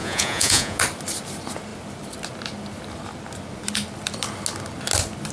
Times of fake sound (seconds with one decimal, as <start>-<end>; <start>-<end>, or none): 0.0-0.8